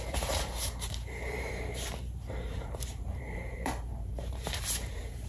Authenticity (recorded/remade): remade